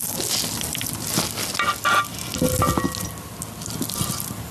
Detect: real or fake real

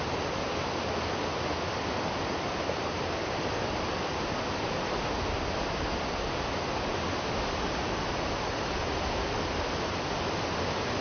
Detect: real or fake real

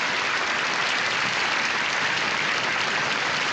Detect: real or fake real